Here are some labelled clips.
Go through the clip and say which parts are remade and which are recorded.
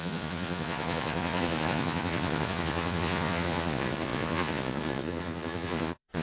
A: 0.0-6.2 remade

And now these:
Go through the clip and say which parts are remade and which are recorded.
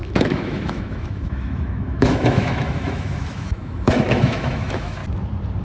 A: 0.0-5.0 remade; 5.0-5.6 recorded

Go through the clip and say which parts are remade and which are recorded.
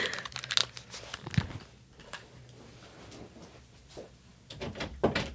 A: 0.0-5.3 recorded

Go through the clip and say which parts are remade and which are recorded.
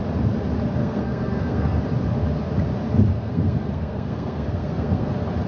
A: 0.0-0.8 recorded; 0.8-1.8 remade; 1.8-3.1 recorded; 3.1-5.1 remade; 5.1-5.5 recorded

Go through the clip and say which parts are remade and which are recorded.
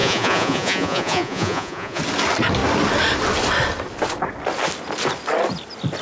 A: 0.0-2.0 remade; 2.0-6.0 recorded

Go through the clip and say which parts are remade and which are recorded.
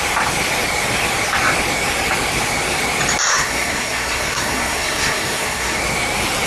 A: 0.0-3.3 recorded; 3.3-5.8 remade; 5.8-6.5 recorded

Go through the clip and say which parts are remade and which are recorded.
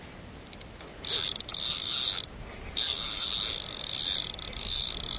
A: 0.0-5.2 recorded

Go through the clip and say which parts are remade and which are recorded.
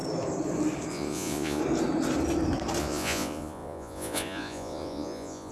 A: 0.0-0.9 recorded; 0.9-1.6 remade; 1.6-2.8 recorded; 2.8-5.5 remade